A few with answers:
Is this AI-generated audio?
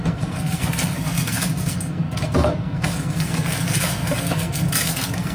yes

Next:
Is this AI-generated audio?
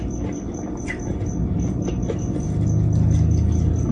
no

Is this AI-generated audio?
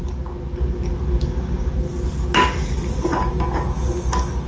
no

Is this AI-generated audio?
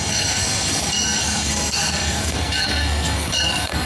yes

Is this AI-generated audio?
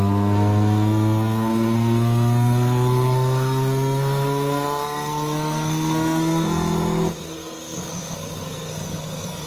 yes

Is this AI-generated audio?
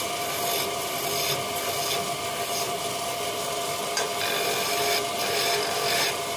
no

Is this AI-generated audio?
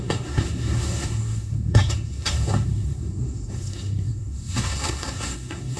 yes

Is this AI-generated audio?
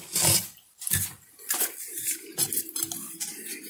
no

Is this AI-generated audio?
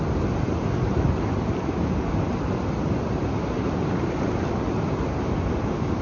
no